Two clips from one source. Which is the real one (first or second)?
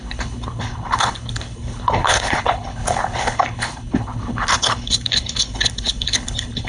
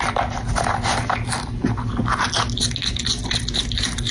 second